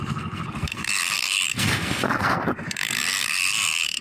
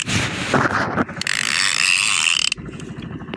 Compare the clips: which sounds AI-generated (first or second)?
first